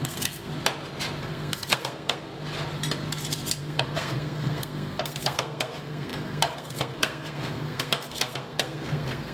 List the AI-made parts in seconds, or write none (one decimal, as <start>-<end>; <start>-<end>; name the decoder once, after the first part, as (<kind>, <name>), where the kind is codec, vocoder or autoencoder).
0.0-0.5 (codec, SNAC); 1.2-2.3; 3.6-9.3